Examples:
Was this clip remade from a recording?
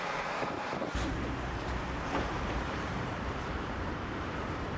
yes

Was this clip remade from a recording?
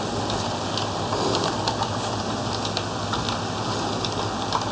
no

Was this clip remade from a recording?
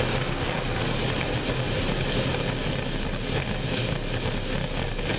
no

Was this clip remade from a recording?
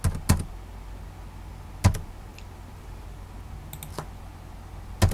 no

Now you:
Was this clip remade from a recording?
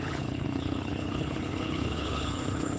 yes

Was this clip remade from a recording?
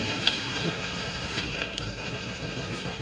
yes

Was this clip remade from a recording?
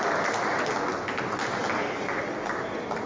no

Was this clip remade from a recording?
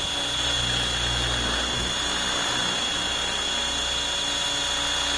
no